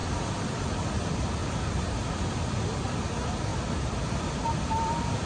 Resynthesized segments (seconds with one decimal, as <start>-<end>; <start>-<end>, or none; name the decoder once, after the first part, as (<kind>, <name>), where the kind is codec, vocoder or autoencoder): 0.0-0.5 (vocoder, BigVGAN v2); 1.4-2.2